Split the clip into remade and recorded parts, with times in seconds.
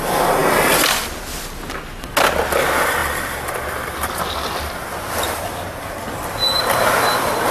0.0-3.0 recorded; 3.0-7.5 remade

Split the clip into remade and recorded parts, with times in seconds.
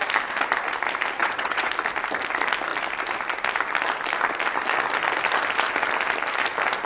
0.0-1.2 recorded; 1.2-1.7 remade; 1.7-6.9 recorded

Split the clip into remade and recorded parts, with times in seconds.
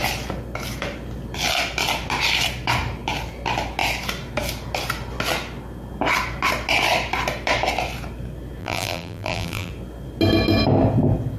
0.0-8.6 recorded; 8.6-9.7 remade; 9.7-11.4 recorded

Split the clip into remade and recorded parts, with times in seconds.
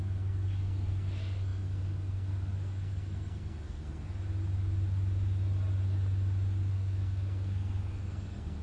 0.0-4.1 remade; 4.1-6.7 recorded; 6.7-8.6 remade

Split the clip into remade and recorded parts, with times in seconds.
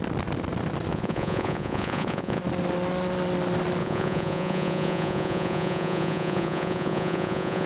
0.0-0.9 recorded; 0.9-2.4 remade; 2.4-3.8 recorded; 3.8-7.7 remade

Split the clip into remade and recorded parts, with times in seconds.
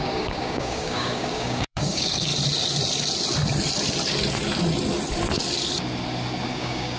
0.0-2.3 remade; 2.3-6.5 recorded; 6.5-7.0 remade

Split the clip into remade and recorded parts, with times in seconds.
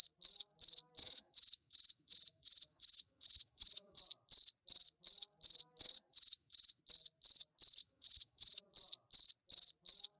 0.0-1.0 recorded; 1.0-4.0 remade; 4.0-6.1 recorded; 6.1-6.8 remade; 6.8-7.8 recorded; 7.8-8.6 remade; 8.6-10.2 recorded